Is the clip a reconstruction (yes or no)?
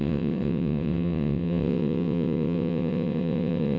yes